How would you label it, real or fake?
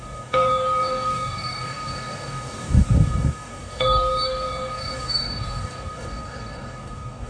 fake